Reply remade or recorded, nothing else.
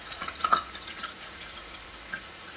remade